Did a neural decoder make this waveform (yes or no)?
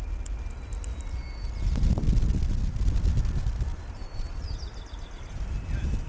no